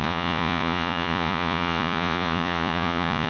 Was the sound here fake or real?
fake